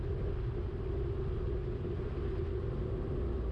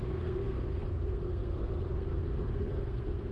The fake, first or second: second